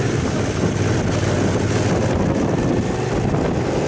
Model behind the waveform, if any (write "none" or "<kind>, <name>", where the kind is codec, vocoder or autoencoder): none